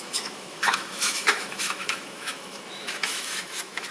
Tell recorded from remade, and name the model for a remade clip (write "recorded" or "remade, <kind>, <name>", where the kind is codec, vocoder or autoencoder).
remade, autoencoder, DAC-VAE